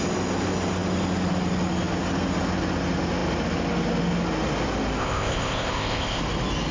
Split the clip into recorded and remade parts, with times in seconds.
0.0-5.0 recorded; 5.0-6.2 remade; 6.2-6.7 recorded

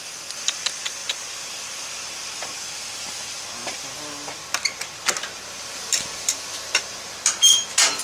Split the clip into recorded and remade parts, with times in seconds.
0.0-8.0 recorded

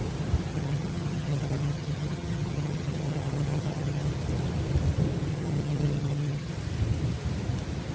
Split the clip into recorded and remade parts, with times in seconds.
0.0-0.5 recorded; 0.5-4.1 remade; 4.1-5.3 recorded; 5.3-6.5 remade; 6.5-7.9 recorded

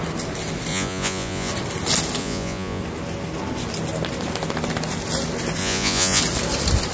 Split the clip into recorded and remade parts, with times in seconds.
0.0-0.7 recorded; 0.7-1.5 remade; 1.5-2.2 recorded; 2.2-2.8 remade; 2.8-5.6 recorded; 5.6-6.2 remade; 6.2-6.9 recorded